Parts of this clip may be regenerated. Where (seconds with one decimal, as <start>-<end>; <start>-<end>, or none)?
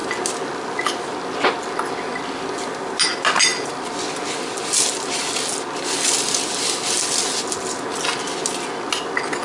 none